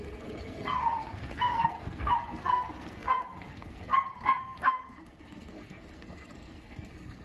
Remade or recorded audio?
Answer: remade